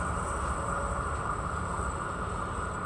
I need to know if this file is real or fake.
real